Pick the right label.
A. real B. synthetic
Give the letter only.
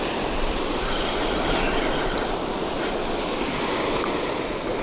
A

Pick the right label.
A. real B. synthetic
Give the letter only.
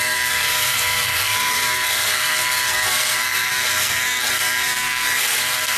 B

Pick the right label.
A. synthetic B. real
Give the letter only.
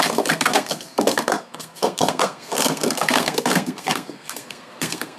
A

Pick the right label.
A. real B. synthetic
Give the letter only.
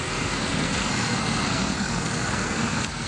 B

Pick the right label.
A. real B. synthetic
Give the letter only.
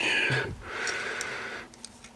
A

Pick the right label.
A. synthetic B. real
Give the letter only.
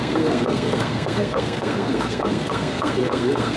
A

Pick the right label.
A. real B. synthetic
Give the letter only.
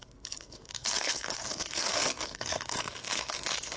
B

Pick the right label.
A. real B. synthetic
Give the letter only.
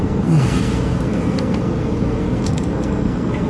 B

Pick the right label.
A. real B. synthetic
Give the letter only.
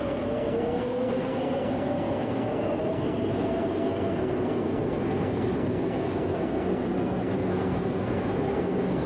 B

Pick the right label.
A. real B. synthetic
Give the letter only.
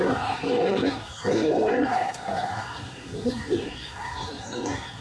B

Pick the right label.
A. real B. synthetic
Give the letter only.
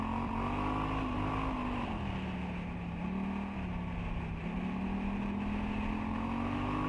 A